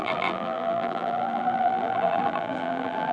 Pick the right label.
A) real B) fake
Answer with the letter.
B